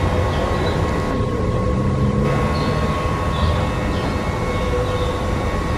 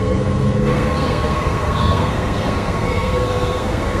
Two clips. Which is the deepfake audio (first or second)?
second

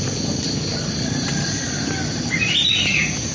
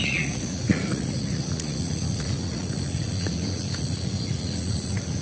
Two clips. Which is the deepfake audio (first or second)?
second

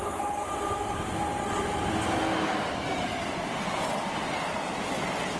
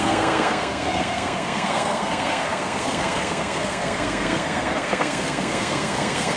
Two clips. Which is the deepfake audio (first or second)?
second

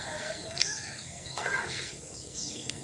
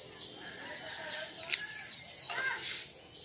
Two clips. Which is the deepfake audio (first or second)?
first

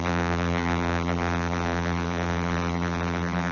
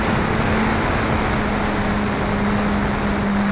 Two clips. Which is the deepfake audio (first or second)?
first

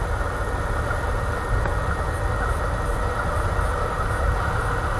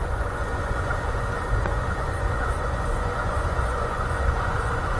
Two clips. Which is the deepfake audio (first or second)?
second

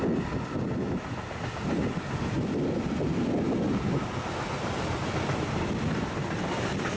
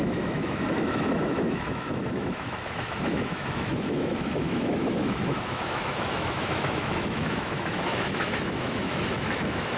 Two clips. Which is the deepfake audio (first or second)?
second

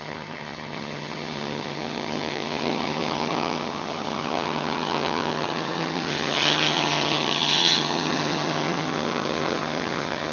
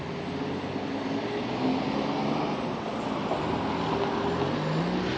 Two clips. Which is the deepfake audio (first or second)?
first